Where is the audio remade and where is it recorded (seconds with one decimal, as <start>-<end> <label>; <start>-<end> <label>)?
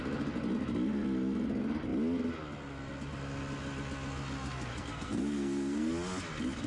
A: 0.0-4.7 recorded; 4.7-5.9 remade; 5.9-6.7 recorded